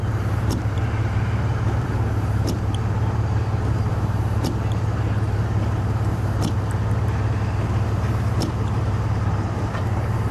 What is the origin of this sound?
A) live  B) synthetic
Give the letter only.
B